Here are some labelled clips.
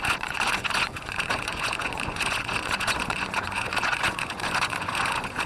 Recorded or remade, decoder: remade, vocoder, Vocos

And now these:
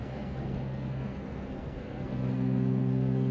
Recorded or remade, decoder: remade, codec, SNAC